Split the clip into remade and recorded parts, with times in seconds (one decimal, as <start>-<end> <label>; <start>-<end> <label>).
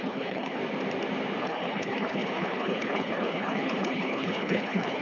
0.0-0.6 remade; 0.6-1.4 recorded; 1.4-5.0 remade